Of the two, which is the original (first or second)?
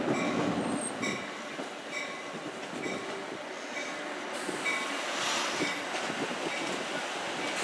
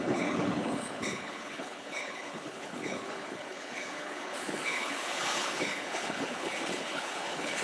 first